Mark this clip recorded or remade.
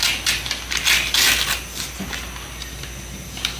recorded